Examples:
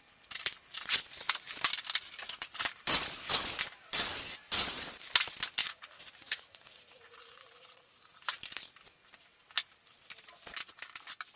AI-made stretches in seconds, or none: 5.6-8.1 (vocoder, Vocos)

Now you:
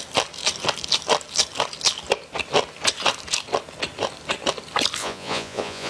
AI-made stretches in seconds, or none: 5.0-5.9 (vocoder, Vocos)

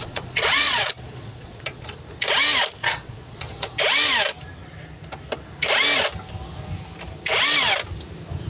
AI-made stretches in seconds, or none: 0.0-1.8 (vocoder, Vocos); 2.8-3.8

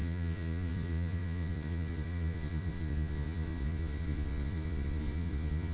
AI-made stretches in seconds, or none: 0.0-5.7 (vocoder, Vocos)

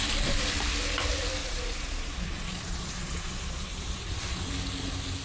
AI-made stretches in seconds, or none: 1.4-4.5 (vocoder, Vocos)

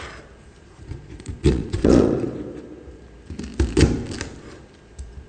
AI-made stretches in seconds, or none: 0.6-3.0 (vocoder, Vocos)

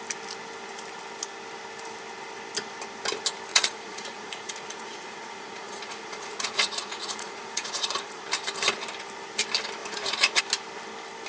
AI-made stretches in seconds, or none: 3.5-8.2 (vocoder, Vocos); 9.8-10.4

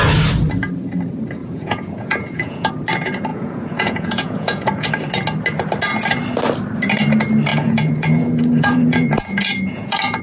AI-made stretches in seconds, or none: 1.4-2.7 (vocoder, Vocos); 3.3-4.9; 7.5-10.2